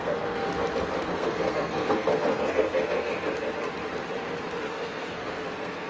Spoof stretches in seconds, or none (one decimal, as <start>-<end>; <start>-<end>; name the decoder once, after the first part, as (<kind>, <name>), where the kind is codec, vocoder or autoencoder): 0.0-0.5 (codec, SNAC); 1.0-3.1; 4.7-5.9